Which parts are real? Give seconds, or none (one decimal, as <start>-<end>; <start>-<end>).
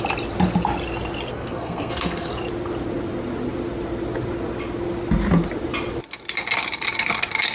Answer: 0.0-1.3; 2.3-7.5